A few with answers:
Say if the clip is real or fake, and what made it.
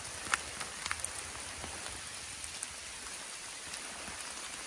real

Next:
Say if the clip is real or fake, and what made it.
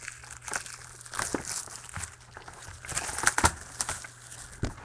real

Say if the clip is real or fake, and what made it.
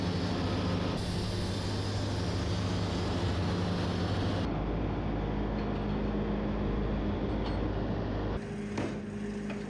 real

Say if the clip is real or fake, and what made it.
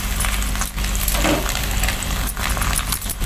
real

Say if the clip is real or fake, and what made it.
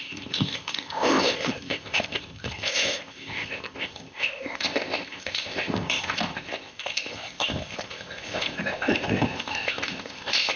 fake, codec, ZipCodec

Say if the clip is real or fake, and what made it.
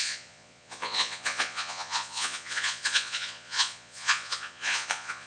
fake, vocoder, Vocos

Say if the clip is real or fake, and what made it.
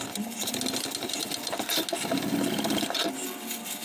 real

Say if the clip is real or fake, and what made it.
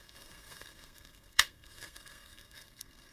fake, codec, SNAC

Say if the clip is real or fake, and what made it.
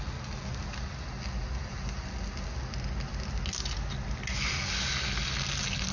real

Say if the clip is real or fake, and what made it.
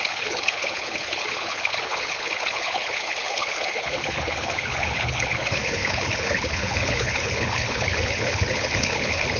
fake, codec, HILCodec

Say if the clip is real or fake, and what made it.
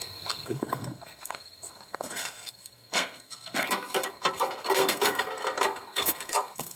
fake, codec, SNAC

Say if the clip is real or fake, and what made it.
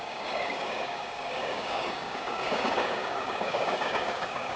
fake, codec, DAC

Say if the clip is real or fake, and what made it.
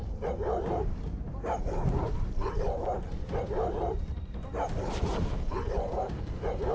fake, vocoder, BigVGAN v2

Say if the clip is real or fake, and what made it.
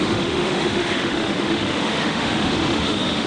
fake, autoencoder, DAC-VAE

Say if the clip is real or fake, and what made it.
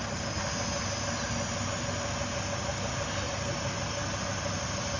real